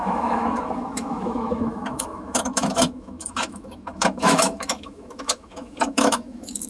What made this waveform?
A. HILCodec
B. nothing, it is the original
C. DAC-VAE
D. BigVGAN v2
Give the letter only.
C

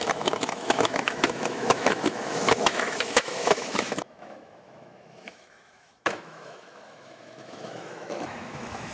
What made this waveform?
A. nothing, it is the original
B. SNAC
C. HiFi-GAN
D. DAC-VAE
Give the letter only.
D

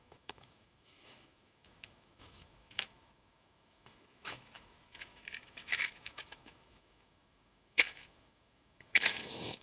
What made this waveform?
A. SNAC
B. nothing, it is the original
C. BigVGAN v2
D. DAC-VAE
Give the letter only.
D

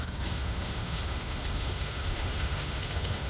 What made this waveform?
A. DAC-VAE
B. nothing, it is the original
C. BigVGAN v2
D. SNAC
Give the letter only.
A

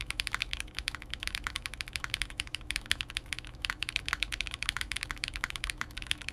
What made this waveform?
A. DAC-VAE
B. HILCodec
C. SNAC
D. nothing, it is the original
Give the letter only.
A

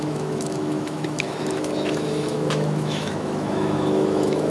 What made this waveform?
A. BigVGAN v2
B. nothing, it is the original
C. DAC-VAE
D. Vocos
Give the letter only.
C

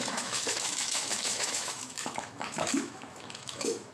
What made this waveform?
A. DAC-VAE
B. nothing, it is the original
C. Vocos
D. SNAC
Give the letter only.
A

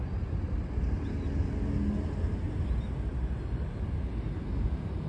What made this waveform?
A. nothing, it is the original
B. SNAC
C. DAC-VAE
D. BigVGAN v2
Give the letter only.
A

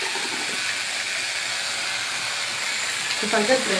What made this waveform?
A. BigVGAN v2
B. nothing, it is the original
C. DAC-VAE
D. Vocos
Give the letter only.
B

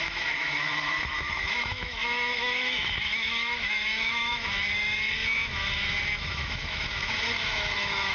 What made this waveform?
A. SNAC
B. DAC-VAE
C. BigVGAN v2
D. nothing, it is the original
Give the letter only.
B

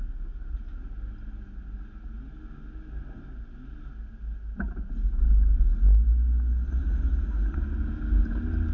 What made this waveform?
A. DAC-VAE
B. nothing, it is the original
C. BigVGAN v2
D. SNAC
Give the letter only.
B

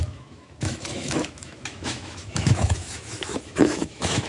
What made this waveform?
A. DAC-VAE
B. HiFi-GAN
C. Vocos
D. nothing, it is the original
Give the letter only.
A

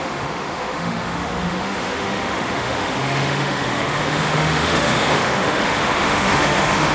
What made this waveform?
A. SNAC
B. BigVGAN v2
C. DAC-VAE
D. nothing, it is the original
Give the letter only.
C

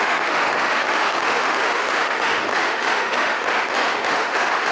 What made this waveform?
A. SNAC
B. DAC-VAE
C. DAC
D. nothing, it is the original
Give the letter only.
B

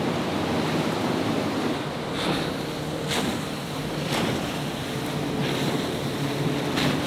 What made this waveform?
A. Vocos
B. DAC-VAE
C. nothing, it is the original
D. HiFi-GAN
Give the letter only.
C